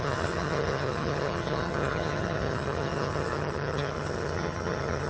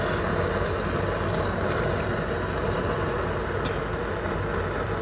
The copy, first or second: first